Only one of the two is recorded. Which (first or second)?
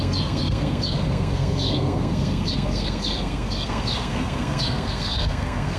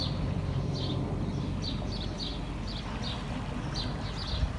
second